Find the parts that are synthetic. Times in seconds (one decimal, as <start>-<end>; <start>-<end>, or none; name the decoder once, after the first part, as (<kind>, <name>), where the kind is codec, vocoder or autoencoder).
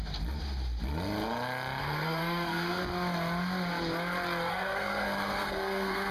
1.8-2.8 (codec, SNAC); 4.5-6.1